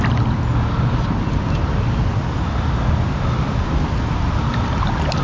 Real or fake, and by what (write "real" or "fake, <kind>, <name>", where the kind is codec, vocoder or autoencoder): real